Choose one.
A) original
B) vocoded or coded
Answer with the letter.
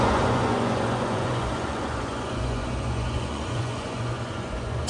B